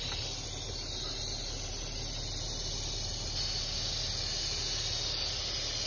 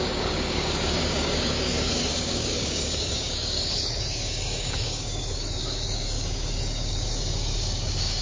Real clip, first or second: first